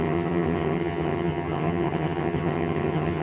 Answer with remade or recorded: remade